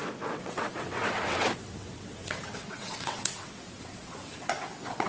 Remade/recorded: remade